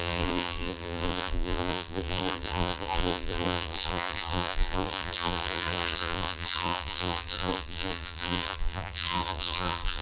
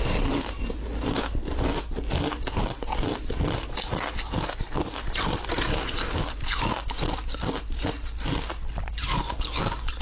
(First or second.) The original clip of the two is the second